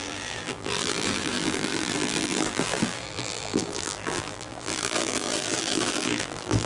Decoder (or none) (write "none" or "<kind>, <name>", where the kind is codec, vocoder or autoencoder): vocoder, BigVGAN v2